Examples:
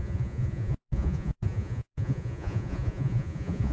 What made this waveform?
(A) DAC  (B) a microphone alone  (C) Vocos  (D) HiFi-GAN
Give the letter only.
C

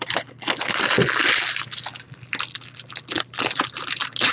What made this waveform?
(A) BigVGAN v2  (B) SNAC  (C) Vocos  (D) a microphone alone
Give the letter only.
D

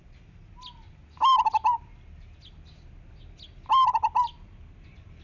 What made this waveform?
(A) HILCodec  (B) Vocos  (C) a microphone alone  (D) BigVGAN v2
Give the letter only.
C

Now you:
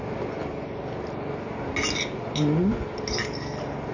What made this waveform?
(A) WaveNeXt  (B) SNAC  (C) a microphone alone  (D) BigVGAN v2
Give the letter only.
C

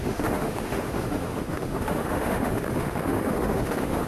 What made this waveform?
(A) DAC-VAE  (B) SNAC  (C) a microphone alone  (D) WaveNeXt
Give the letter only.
A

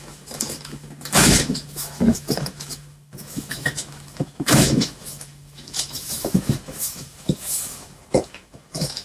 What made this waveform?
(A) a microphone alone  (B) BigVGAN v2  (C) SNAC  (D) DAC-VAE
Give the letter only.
D